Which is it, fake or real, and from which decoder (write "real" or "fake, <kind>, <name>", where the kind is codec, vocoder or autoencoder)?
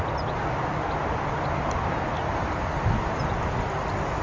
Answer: real